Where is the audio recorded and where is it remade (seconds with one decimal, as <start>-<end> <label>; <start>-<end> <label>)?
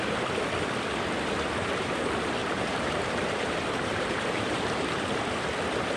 0.0-2.4 recorded; 2.4-5.2 remade; 5.2-6.0 recorded